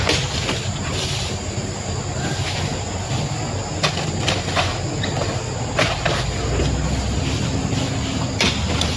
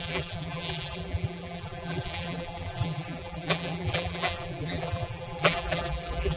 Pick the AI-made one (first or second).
second